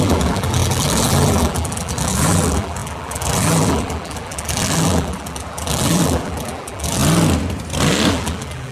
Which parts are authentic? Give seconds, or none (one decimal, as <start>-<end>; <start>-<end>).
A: 7.0-8.1